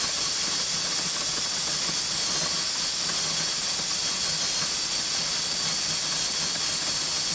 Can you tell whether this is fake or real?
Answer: real